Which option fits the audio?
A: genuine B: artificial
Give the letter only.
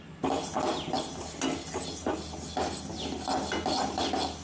A